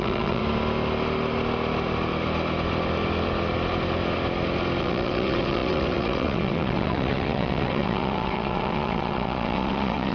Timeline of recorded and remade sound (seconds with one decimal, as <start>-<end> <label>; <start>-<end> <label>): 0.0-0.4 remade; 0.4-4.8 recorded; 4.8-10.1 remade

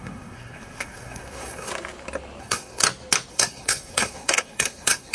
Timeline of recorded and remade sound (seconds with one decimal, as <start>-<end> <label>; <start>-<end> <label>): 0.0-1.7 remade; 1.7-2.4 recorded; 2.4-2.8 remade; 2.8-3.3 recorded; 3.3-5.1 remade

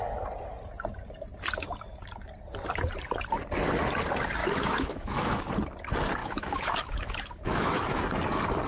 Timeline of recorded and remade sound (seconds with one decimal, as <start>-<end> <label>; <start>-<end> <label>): 0.0-4.4 recorded; 4.4-5.5 remade; 5.5-6.2 recorded; 6.2-8.0 remade; 8.0-8.7 recorded